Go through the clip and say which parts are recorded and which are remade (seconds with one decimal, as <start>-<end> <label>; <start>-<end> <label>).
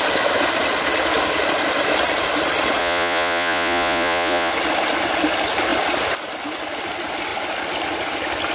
0.0-2.8 recorded; 2.8-4.5 remade; 4.5-8.5 recorded